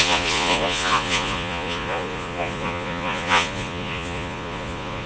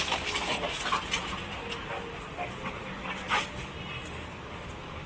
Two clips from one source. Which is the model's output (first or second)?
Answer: first